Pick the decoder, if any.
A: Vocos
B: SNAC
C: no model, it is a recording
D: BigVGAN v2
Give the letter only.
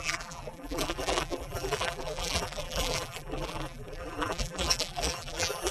D